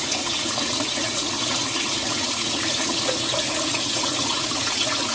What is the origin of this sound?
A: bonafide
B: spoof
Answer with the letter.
B